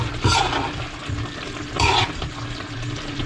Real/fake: fake